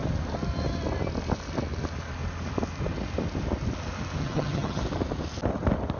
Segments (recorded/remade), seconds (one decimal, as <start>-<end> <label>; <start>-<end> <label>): 0.0-4.2 recorded; 4.2-4.8 remade; 4.8-6.0 recorded